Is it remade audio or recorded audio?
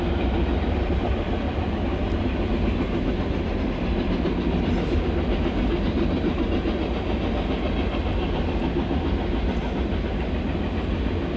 recorded